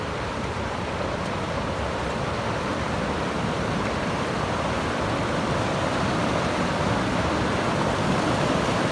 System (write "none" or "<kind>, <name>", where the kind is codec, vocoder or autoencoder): vocoder, BigVGAN v2